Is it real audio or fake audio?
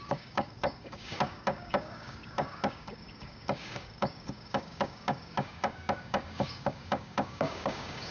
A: fake